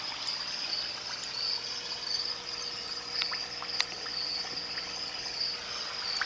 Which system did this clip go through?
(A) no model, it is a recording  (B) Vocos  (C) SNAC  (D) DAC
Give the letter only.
A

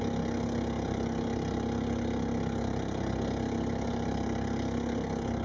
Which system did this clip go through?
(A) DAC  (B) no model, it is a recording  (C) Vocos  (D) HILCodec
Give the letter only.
B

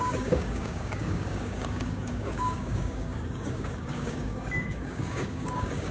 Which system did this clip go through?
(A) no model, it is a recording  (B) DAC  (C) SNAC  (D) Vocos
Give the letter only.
B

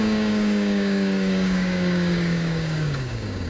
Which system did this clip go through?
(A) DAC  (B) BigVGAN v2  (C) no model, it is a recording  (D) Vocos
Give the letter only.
A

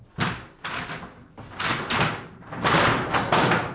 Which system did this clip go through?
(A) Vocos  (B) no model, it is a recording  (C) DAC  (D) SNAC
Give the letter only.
B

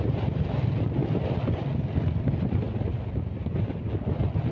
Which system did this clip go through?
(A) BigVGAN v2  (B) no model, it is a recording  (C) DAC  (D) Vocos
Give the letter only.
B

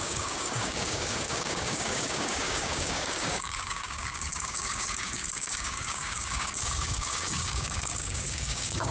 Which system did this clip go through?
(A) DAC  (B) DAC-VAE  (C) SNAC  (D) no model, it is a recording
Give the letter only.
A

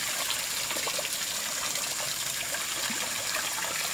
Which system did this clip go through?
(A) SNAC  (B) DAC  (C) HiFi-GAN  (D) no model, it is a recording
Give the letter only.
D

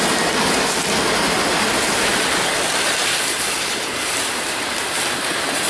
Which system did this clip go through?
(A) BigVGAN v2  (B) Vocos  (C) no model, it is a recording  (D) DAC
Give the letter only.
C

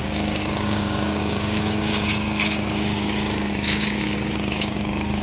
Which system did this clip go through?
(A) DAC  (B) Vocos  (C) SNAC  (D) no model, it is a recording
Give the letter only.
A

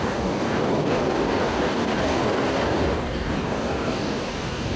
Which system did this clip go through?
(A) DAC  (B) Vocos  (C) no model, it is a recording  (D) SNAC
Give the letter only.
A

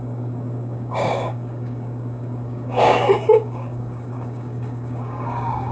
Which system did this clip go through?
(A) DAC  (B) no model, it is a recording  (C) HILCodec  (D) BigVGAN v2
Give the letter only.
A